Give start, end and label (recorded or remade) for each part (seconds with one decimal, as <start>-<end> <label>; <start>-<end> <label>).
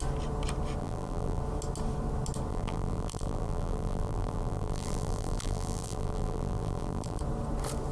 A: 0.0-0.8 recorded; 0.8-1.4 remade; 1.4-2.5 recorded; 2.5-7.2 remade; 7.2-7.9 recorded